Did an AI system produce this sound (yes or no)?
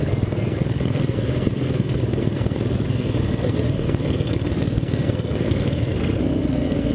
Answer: yes